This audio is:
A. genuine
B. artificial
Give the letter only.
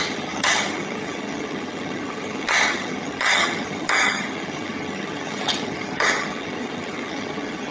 B